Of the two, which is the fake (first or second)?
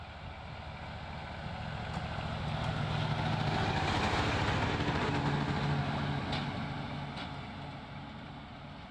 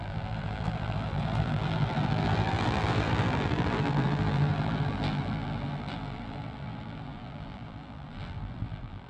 second